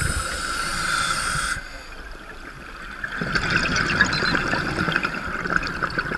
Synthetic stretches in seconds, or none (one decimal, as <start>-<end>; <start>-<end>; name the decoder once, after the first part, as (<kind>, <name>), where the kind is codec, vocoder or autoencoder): none